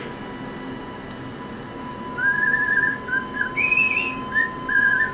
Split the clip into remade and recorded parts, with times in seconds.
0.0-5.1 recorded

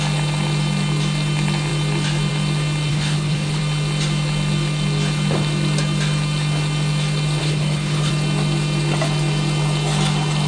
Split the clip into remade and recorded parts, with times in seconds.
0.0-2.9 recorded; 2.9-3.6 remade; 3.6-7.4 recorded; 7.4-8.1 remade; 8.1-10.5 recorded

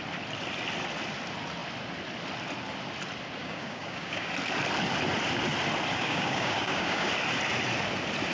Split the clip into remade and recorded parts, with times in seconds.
0.0-3.4 recorded; 3.4-4.3 remade; 4.3-5.9 recorded; 5.9-7.1 remade; 7.1-8.3 recorded